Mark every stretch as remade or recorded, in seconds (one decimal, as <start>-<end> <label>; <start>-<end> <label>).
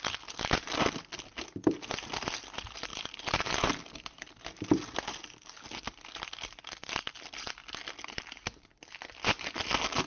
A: 0.0-2.9 recorded; 2.9-4.3 remade; 4.3-10.1 recorded